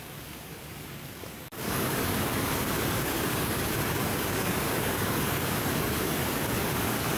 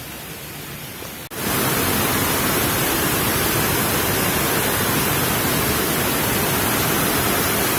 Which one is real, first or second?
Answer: second